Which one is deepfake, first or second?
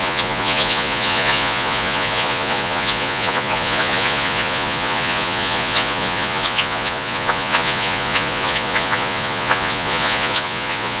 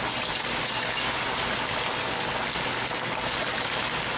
first